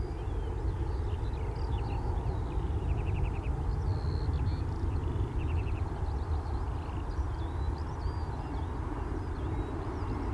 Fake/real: real